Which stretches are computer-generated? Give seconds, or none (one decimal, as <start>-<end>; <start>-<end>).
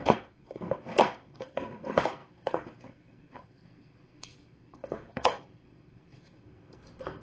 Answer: 0.0-7.2